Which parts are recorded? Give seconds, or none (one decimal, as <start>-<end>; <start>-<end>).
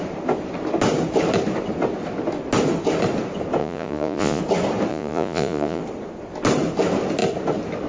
0.0-3.6; 4.4-4.9; 5.8-7.9